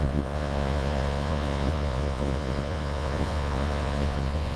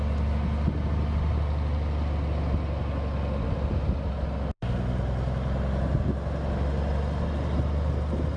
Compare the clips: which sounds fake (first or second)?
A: first